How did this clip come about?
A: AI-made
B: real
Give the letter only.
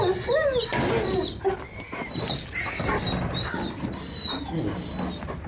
B